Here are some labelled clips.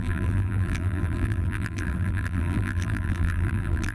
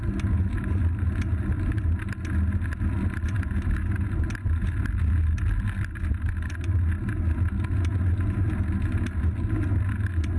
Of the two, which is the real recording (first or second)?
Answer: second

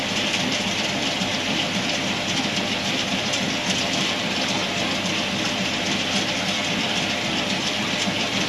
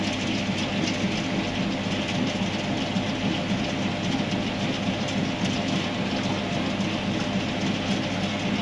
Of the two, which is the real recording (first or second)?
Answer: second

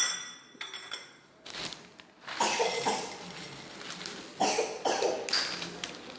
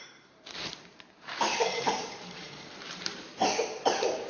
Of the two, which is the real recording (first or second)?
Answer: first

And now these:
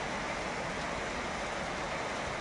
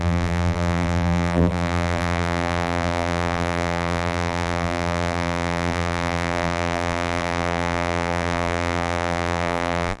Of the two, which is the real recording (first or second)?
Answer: first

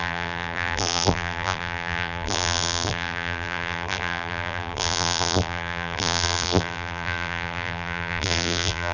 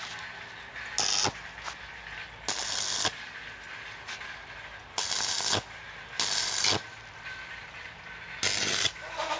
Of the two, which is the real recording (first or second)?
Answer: second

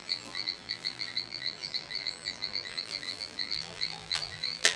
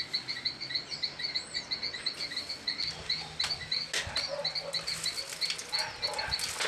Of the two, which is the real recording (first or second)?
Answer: second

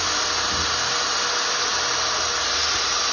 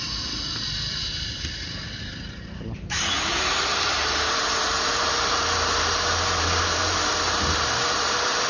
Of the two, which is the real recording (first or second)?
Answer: first